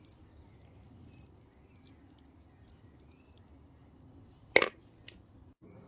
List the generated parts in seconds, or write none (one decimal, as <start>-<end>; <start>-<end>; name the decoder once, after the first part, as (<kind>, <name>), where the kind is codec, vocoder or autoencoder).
none